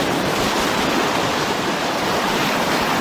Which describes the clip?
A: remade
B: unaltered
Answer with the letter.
B